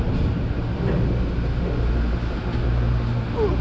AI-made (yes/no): no